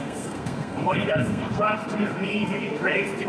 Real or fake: fake